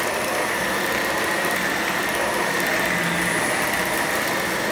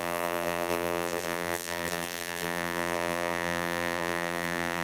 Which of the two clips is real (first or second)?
first